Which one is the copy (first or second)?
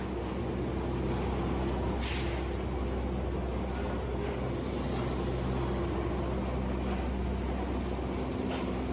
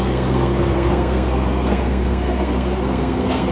second